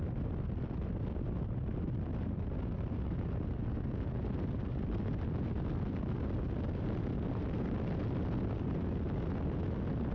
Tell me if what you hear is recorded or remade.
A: recorded